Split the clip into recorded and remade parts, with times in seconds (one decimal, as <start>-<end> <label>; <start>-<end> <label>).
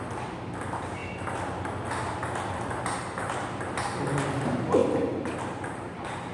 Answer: 0.0-4.8 recorded; 4.8-6.3 remade